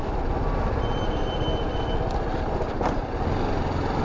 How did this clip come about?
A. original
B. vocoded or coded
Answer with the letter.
A